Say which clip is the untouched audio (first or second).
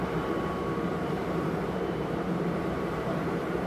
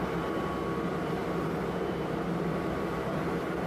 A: second